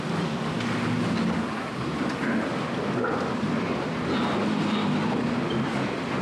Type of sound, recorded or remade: recorded